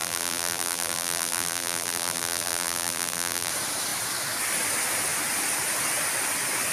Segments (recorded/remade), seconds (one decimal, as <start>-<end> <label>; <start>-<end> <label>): 0.0-3.5 remade; 3.5-6.7 recorded